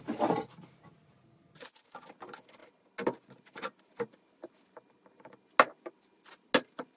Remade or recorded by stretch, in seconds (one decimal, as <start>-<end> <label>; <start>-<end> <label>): 0.0-7.0 recorded